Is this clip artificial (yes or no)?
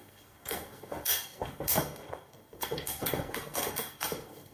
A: yes